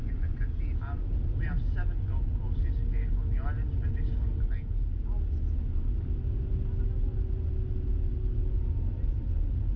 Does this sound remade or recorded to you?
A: recorded